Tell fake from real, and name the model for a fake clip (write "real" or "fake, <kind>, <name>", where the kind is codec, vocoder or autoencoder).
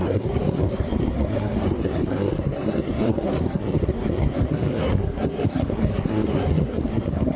fake, codec, SNAC